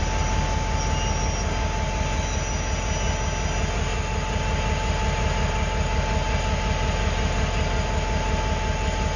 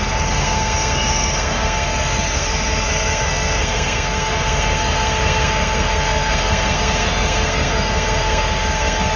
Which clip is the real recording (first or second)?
first